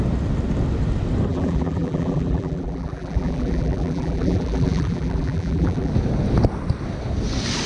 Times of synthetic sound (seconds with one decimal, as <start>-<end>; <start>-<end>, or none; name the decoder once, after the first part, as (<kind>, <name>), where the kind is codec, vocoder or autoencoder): 1.3-5.9 (vocoder, BigVGAN v2)